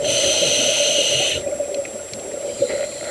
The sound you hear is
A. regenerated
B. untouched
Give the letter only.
B